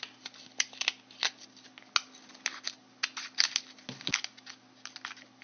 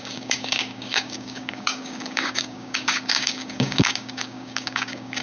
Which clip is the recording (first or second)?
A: first